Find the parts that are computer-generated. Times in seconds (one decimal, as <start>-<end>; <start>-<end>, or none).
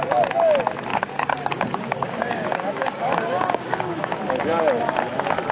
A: 0.9-4.2